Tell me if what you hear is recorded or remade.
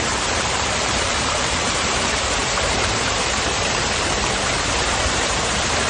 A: remade